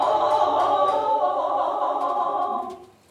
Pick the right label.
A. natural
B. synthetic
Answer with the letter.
A